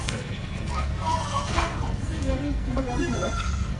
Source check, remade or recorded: remade